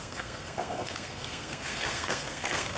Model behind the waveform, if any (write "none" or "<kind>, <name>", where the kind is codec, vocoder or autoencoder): codec, SNAC